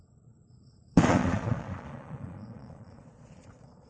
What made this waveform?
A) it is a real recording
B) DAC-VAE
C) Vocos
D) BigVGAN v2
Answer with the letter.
C